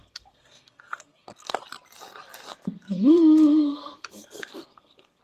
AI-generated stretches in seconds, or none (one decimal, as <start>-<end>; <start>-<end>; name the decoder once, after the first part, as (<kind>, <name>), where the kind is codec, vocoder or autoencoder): 0.0-1.6 (codec, SNAC); 2.5-5.2